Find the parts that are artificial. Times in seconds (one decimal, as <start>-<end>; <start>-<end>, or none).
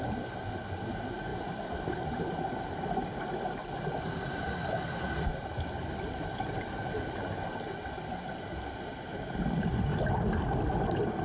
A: 9.9-11.2